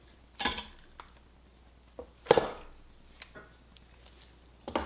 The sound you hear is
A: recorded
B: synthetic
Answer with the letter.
A